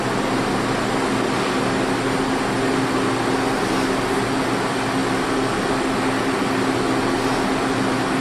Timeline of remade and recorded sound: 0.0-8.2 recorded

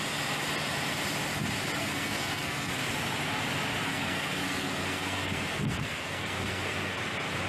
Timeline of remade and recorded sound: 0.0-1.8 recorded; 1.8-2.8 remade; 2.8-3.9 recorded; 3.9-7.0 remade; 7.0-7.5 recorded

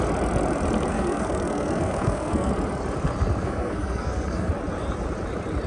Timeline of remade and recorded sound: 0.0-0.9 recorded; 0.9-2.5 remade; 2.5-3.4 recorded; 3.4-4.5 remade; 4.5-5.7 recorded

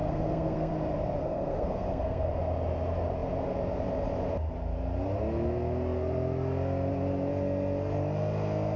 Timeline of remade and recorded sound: 0.0-0.7 remade; 0.7-1.2 recorded; 1.2-2.3 remade; 2.3-8.8 recorded

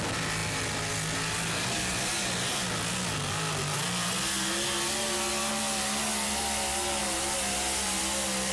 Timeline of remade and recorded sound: 0.0-8.5 recorded

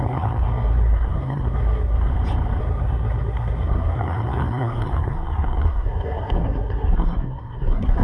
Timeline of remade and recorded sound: 0.0-2.1 remade; 2.1-2.6 recorded; 2.6-8.0 remade